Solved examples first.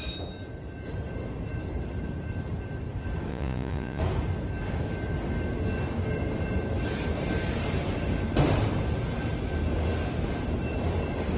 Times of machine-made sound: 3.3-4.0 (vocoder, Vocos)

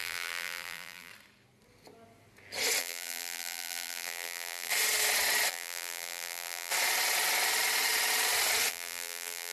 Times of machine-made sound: 0.0-1.1 (vocoder, BigVGAN v2); 2.8-4.7; 5.5-6.7; 8.7-9.5

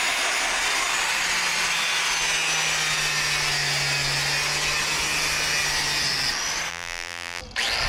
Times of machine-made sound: 6.7-7.4 (vocoder, BigVGAN v2)